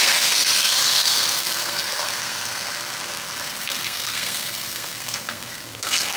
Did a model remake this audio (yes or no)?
yes